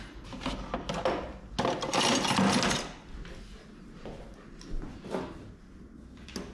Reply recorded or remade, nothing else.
recorded